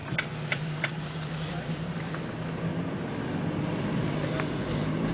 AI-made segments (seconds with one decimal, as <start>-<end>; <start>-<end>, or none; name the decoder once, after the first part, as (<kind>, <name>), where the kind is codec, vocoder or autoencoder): 0.0-2.2 (vocoder, BigVGAN v2); 2.7-5.1